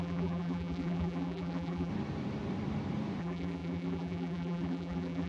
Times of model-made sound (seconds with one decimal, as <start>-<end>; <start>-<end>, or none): 0.0-1.9; 3.2-5.3